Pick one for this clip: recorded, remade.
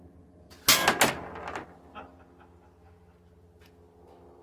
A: recorded